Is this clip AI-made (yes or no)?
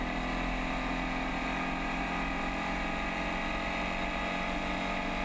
no